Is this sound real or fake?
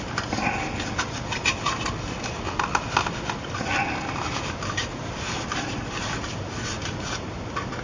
fake